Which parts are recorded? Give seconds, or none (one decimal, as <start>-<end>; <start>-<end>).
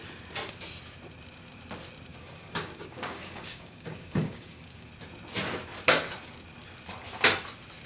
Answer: 0.0-2.1; 4.9-7.9